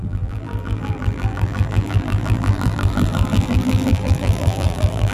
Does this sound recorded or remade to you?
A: remade